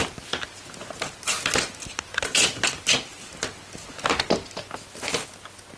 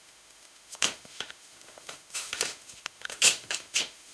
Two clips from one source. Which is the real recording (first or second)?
first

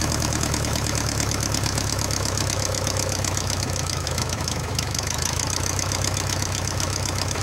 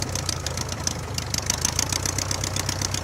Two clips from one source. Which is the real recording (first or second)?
second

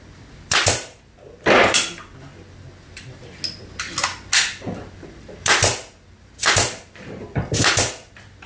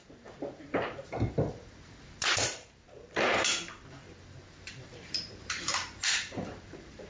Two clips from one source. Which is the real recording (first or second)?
first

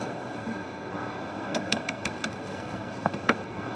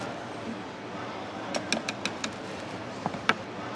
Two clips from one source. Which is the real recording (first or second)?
second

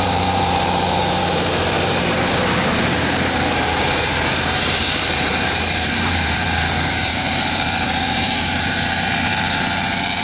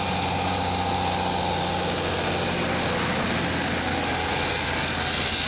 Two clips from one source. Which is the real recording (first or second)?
second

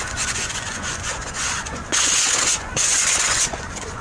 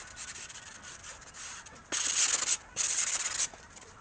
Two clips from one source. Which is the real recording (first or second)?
second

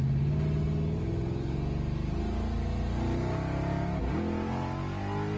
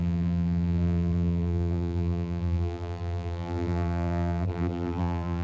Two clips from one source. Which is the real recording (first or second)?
first